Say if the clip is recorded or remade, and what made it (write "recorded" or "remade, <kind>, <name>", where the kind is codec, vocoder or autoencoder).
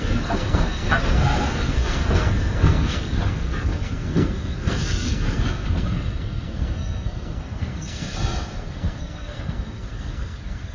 remade, codec, SNAC